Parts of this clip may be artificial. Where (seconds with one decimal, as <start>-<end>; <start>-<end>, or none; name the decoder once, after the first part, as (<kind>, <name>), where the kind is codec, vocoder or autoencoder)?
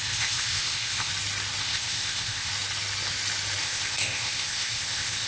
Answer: 0.0-1.1 (codec, ZipCodec); 1.6-2.5; 3.6-5.3